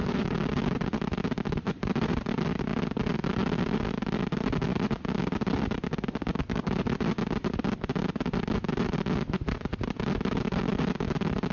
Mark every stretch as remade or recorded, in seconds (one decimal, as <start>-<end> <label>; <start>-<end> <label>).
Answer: 0.0-11.5 recorded